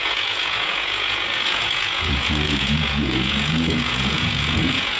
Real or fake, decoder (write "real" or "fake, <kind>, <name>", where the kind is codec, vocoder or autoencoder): fake, vocoder, Vocos